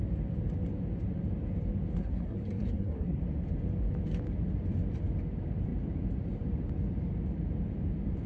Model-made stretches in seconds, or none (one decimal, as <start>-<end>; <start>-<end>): 2.0-3.2